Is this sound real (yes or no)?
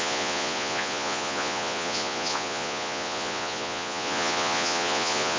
no